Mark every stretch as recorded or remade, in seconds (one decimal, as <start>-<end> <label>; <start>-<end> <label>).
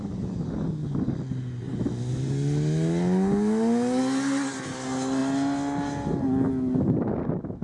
0.0-7.6 recorded